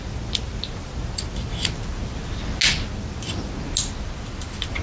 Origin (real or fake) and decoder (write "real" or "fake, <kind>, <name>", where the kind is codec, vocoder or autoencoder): real